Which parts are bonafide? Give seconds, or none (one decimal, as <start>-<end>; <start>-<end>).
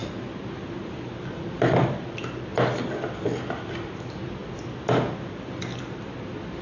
0.0-6.6